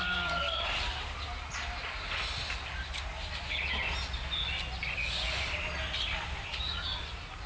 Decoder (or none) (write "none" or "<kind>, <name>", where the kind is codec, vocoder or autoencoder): none